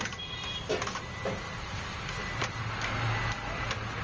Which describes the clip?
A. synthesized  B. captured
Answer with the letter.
B